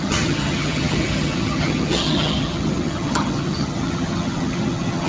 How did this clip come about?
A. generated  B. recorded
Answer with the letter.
A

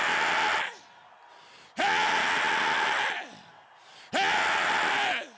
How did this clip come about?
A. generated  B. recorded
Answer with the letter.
B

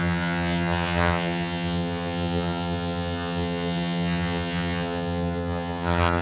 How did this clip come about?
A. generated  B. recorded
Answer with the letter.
A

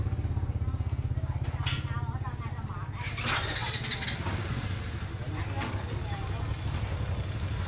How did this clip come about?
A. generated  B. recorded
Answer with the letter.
B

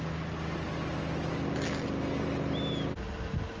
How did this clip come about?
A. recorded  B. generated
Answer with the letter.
A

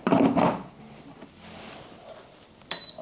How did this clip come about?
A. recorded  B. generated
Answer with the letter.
A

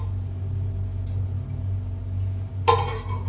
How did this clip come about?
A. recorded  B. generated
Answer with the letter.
A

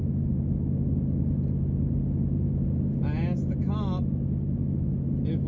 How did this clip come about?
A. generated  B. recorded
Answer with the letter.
B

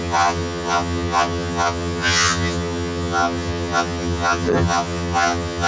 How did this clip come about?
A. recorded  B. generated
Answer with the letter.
B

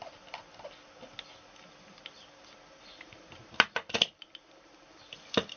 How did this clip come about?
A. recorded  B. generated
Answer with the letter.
A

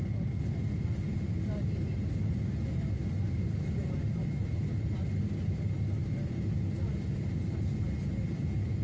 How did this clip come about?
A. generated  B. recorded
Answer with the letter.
B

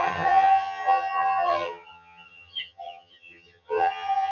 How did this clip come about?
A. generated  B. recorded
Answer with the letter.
A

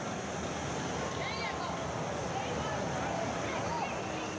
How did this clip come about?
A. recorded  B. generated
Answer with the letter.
A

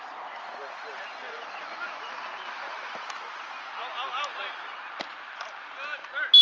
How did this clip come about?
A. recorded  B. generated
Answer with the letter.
A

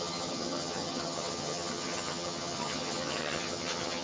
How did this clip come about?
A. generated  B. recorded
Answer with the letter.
A